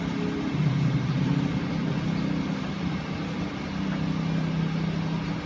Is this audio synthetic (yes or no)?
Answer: no